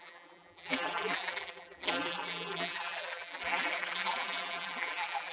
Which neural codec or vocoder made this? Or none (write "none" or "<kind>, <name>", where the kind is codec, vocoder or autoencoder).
vocoder, BigVGAN v2